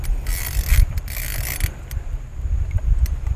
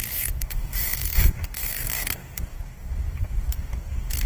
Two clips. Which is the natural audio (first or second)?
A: first